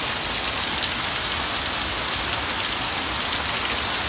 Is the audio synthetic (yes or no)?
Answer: no